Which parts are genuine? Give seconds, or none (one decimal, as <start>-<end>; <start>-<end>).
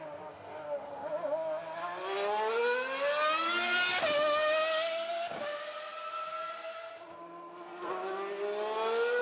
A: 0.0-9.2